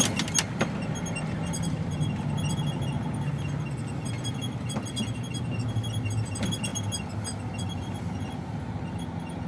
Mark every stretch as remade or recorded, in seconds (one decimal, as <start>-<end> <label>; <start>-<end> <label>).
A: 0.0-9.5 recorded